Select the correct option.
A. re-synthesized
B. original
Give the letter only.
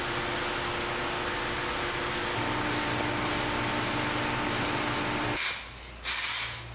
B